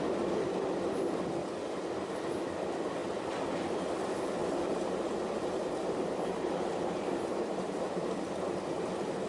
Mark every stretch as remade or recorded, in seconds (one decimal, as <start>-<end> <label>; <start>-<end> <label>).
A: 0.0-4.4 recorded; 4.4-7.8 remade; 7.8-9.3 recorded